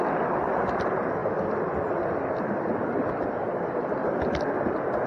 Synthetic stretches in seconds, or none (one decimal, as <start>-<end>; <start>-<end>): none